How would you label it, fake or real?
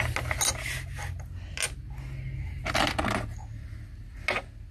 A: real